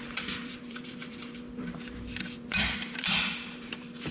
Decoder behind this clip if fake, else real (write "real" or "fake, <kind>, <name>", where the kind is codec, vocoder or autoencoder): fake, vocoder, BigVGAN v2